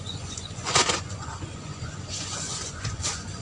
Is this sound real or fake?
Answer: fake